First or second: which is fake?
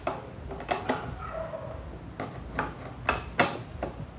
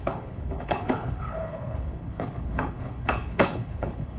second